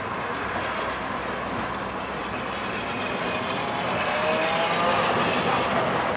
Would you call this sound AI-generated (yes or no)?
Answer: no